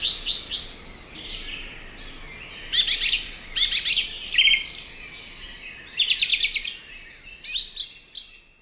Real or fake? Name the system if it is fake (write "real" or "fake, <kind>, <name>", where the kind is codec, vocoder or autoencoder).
real